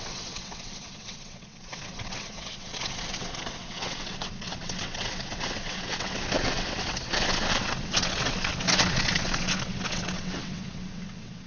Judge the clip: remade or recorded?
remade